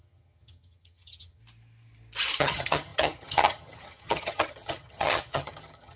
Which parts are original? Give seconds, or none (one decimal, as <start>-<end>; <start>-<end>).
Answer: 1.4-2.4